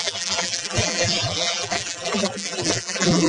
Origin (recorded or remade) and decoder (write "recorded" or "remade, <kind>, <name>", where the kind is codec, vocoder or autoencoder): remade, vocoder, BigVGAN v2